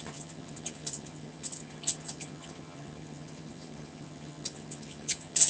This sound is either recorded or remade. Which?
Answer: remade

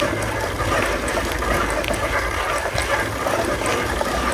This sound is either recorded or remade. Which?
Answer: recorded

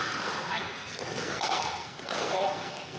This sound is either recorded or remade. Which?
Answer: remade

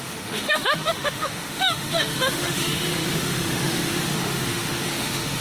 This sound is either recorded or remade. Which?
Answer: remade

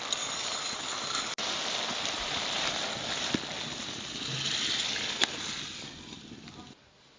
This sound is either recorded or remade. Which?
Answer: recorded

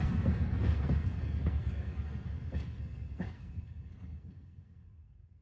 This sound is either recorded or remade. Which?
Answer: remade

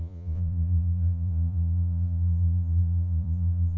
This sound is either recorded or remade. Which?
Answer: remade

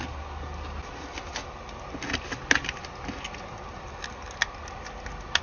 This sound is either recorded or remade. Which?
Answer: recorded